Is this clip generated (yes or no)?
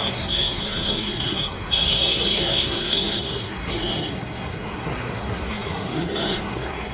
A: yes